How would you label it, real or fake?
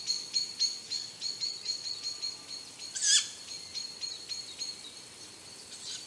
real